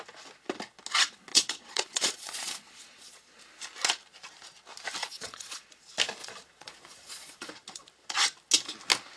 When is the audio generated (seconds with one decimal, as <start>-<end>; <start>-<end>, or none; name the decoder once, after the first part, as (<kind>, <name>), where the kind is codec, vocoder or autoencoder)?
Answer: 1.3-3.4 (vocoder, Vocos); 5.0-5.8; 6.2-7.5